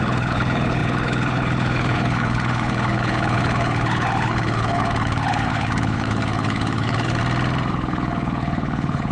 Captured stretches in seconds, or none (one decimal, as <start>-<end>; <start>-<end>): 7.2-7.7